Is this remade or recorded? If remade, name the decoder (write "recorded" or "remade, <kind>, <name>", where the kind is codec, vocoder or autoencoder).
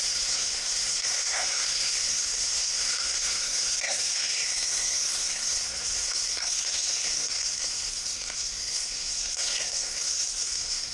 remade, codec, SNAC